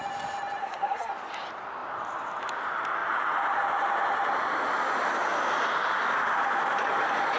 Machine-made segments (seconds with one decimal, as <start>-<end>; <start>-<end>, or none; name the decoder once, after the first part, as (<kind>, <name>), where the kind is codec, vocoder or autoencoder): 0.6-1.1 (codec, SNAC)